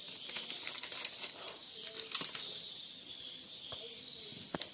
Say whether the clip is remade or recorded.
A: remade